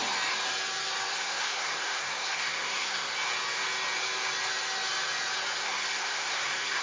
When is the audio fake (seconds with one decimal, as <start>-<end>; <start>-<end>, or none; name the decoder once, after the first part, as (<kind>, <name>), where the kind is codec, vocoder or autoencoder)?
1.1-3.1 (codec, SNAC); 5.6-6.8